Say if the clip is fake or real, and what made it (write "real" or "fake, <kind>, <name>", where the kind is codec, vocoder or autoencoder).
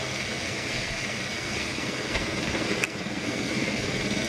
fake, codec, SNAC